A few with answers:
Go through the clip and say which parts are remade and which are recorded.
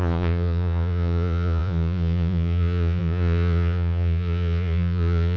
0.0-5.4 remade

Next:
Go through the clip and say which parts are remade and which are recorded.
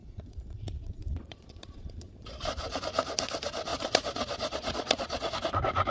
0.0-2.8 remade; 2.8-3.7 recorded; 3.7-5.3 remade; 5.3-5.9 recorded